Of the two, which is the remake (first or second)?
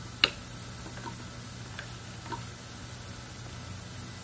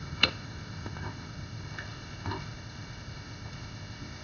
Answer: second